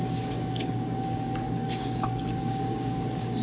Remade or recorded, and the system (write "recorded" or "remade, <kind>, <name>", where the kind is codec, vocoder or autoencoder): remade, codec, DAC